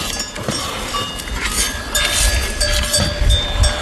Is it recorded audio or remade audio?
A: recorded